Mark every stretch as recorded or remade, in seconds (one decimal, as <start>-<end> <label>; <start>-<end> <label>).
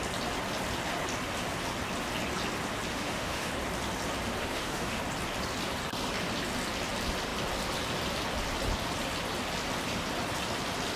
0.0-2.9 recorded; 2.9-3.5 remade; 3.5-4.4 recorded; 4.4-5.0 remade; 5.0-11.0 recorded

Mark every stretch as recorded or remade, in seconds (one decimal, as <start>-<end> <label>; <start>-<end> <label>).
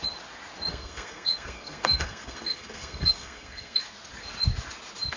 0.0-0.7 recorded; 0.7-3.8 remade; 3.8-5.2 recorded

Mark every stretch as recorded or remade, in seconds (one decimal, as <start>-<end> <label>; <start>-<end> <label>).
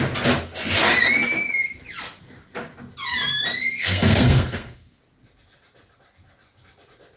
0.0-3.6 recorded; 3.6-5.0 remade; 5.0-7.2 recorded